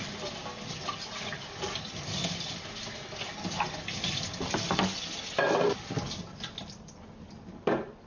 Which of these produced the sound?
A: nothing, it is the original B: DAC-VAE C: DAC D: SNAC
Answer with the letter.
A